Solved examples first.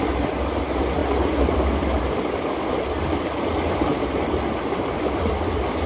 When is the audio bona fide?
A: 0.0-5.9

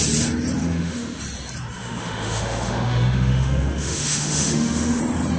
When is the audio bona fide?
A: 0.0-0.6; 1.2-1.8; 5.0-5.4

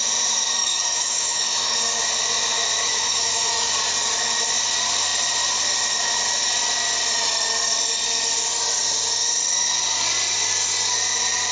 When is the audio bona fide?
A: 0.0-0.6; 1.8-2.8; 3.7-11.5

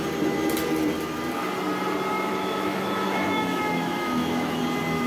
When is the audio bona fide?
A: 0.0-2.1; 4.6-5.1

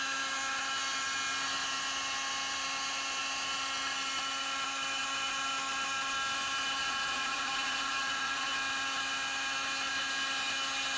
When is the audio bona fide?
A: 0.0-6.8; 8.5-11.0

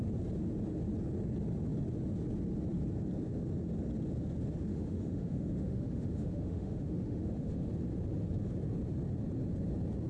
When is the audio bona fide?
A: 0.0-4.7; 7.7-10.1

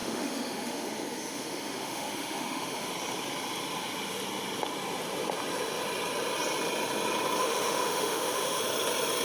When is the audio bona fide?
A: 2.9-7.4; 8.6-9.2